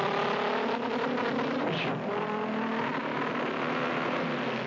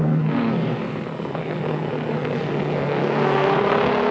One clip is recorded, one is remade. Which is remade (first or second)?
second